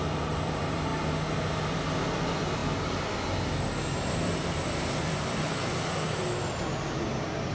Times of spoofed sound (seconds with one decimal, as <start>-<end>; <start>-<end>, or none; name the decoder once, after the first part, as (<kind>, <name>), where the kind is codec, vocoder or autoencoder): 0.0-0.9 (vocoder, BigVGAN v2); 2.0-7.5